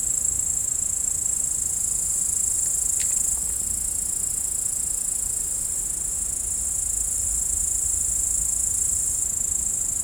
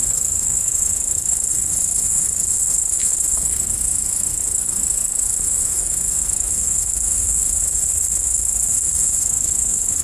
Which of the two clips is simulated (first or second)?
second